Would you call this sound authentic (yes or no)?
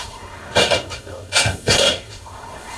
no